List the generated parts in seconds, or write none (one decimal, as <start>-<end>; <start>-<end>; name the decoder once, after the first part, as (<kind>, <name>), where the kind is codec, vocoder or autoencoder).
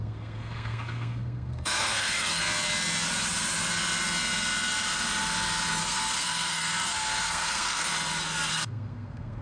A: 0.0-2.4 (codec, SNAC); 5.8-7.9; 8.5-9.4